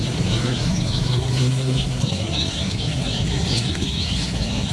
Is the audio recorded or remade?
remade